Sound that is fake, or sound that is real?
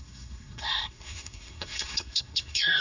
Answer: fake